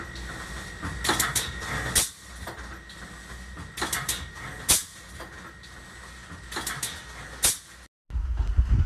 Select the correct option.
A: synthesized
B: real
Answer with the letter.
B